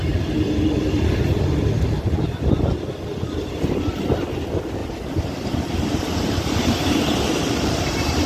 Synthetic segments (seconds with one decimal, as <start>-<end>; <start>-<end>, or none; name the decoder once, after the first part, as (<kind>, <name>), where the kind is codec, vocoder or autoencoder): 4.8-8.3 (vocoder, BigVGAN v2)

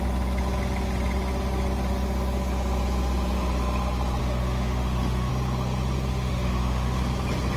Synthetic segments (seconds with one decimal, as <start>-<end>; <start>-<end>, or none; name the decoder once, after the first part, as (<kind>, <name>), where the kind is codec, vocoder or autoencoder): 4.2-5.3 (autoencoder, DAC-VAE); 6.1-7.0

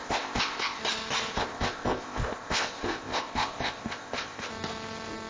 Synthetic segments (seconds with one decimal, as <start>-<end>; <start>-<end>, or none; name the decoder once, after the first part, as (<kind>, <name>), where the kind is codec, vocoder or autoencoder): 0.0-0.8 (codec, ZipCodec); 1.3-4.5

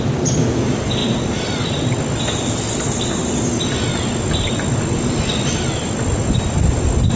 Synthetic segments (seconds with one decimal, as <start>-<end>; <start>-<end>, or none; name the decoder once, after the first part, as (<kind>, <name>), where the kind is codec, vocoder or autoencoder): none

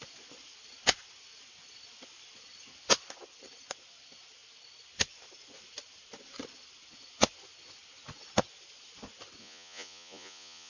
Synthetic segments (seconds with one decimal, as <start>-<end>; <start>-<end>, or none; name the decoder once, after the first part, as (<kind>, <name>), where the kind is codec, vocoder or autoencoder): 9.4-10.7 (vocoder, Vocos)